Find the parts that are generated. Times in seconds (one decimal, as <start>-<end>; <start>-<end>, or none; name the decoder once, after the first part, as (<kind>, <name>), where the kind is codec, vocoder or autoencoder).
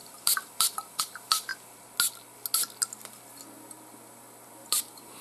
0.0-1.5 (vocoder, BigVGAN v2); 4.6-5.2